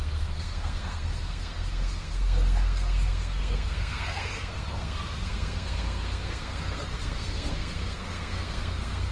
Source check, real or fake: fake